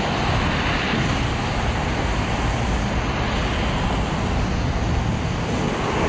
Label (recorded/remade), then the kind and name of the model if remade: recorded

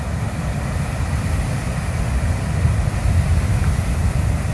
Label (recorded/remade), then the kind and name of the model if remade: recorded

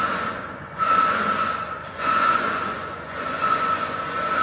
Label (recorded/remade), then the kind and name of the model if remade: remade, vocoder, Vocos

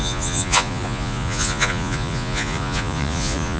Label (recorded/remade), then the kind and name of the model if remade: remade, vocoder, Vocos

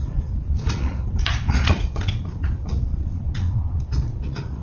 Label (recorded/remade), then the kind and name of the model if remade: remade, vocoder, Vocos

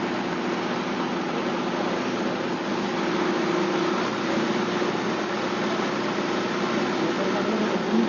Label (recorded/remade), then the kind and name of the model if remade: recorded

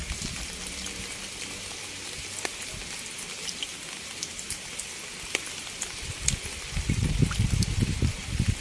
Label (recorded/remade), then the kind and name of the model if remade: recorded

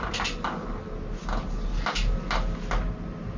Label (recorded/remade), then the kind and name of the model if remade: recorded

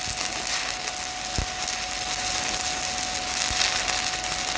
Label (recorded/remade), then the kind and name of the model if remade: recorded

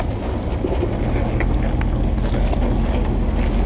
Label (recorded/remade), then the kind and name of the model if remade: recorded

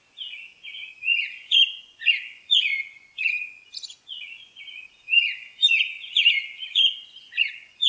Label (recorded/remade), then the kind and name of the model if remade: remade, vocoder, Vocos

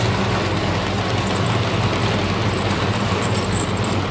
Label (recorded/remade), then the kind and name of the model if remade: recorded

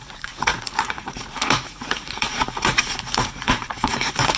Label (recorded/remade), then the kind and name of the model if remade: remade, vocoder, Vocos